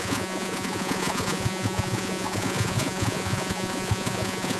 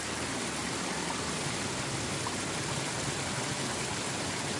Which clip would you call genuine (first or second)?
second